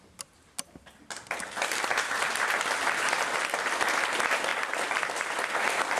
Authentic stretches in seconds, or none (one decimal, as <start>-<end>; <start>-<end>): 0.0-6.0